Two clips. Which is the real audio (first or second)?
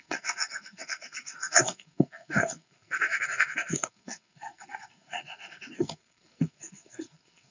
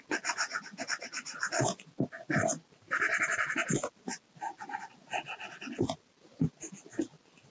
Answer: second